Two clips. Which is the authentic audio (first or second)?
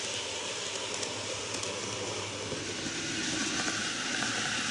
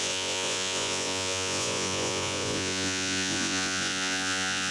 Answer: first